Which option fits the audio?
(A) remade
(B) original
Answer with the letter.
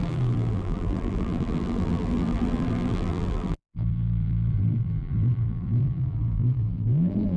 A